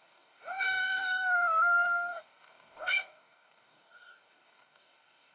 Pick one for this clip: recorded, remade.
remade